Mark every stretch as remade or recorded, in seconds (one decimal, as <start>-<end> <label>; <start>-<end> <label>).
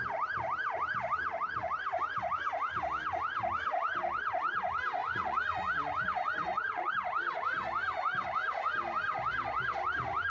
0.0-5.0 recorded; 5.0-6.9 remade; 6.9-10.3 recorded